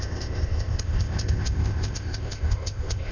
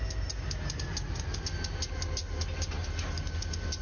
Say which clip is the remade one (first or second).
first